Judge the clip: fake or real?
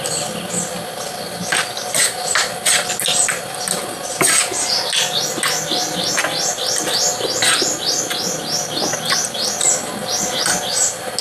real